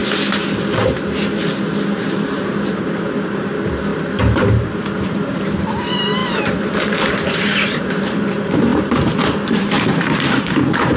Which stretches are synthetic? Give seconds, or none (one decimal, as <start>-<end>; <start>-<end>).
2.1-3.9; 4.5-11.0

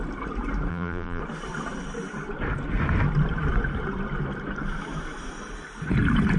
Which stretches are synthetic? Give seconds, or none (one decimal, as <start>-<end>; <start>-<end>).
0.7-1.2

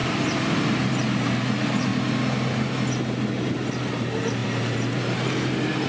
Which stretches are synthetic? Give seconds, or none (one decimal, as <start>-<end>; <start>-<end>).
0.0-0.9; 4.4-5.9

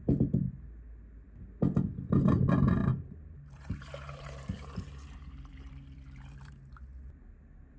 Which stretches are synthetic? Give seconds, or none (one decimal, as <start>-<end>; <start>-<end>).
2.8-6.5